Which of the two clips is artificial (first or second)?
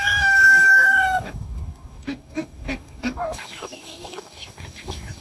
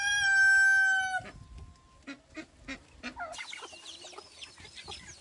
first